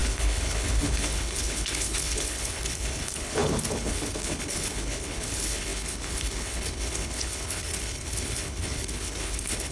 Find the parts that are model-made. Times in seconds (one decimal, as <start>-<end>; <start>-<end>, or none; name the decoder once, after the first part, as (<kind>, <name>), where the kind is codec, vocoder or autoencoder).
0.0-9.7 (codec, HILCodec)